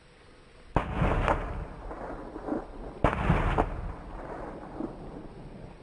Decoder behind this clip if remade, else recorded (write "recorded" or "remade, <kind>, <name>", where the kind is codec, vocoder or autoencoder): recorded